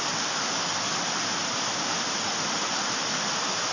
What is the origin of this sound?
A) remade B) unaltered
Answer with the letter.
B